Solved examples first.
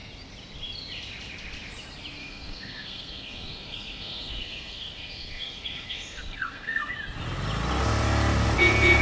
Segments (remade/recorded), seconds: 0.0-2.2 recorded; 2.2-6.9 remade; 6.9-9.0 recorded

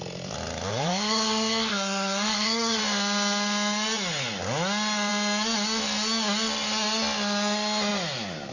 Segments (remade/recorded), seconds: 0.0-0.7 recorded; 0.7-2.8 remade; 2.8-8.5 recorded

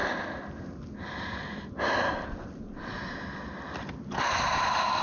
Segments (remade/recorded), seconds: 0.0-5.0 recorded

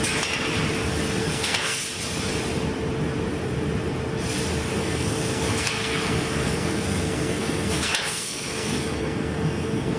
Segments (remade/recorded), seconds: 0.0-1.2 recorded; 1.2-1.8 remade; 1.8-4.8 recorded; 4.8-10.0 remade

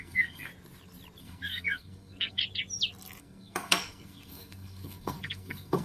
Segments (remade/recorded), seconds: 0.0-0.5 remade; 0.5-1.2 recorded; 1.2-2.4 remade; 2.4-3.2 recorded; 3.2-5.8 remade